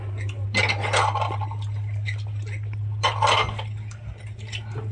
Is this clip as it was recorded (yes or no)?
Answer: yes